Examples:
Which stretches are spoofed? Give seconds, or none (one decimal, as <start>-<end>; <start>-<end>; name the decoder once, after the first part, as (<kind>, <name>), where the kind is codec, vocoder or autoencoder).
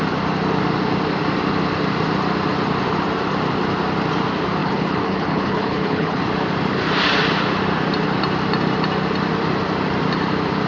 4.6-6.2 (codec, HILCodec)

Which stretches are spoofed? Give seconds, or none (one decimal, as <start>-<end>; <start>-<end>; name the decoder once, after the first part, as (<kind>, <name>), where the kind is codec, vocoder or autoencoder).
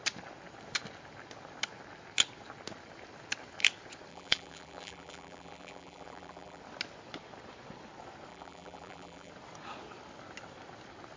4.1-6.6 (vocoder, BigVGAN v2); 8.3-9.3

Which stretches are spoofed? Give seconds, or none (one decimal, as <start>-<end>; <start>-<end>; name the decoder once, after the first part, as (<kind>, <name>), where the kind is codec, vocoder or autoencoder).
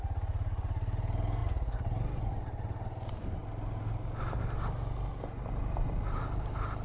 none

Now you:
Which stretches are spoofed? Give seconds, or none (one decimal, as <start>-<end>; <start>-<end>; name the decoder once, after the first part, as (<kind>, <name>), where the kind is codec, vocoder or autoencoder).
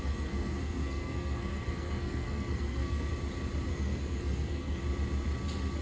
0.0-3.1 (codec, SNAC); 3.7-4.8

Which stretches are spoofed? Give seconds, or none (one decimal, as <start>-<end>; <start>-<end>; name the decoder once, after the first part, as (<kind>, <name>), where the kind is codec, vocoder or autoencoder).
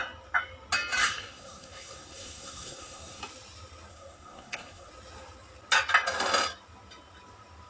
1.0-3.2 (codec, SNAC); 3.9-4.9